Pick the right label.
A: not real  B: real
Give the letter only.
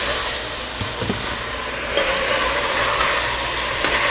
B